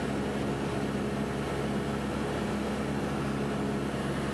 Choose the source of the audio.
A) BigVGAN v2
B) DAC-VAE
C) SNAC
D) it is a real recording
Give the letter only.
D